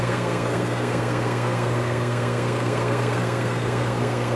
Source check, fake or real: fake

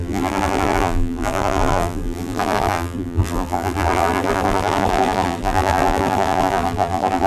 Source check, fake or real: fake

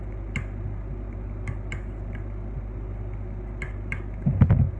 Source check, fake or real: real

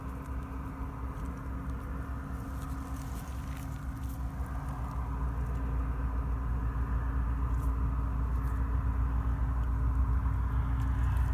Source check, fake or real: real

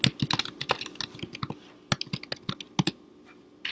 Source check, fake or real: real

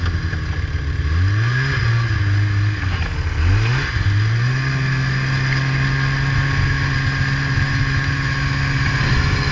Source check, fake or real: real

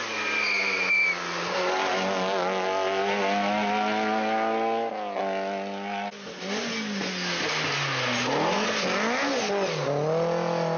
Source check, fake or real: real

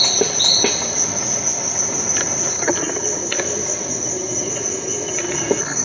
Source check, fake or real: real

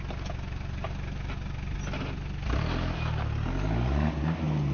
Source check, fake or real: real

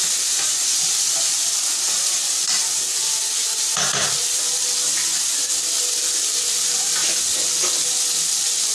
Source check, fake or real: real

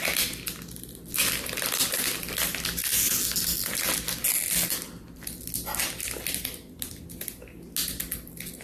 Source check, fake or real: real